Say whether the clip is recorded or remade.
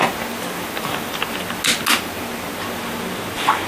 recorded